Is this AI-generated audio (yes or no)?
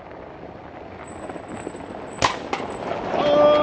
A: no